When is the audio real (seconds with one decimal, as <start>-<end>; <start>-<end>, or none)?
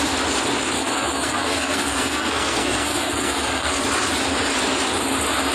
0.0-0.8; 3.8-5.5